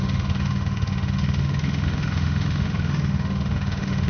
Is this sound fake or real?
fake